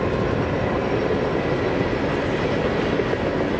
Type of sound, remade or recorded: recorded